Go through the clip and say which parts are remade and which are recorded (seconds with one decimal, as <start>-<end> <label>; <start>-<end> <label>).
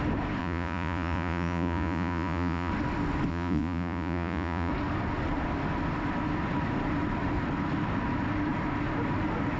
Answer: 0.0-0.4 recorded; 0.4-2.7 remade; 2.7-3.3 recorded; 3.3-4.7 remade; 4.7-9.6 recorded